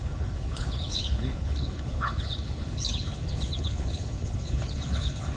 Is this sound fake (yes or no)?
yes